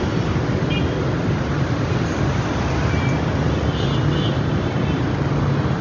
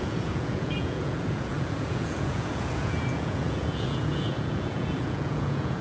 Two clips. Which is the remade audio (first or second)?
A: second